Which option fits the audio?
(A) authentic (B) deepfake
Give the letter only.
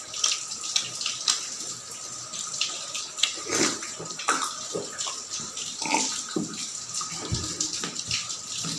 A